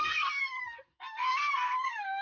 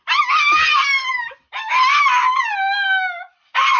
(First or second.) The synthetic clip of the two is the first